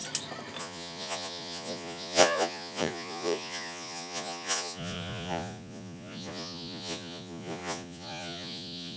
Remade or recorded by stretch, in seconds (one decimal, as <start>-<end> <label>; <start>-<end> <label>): 0.0-0.6 recorded; 0.6-9.0 remade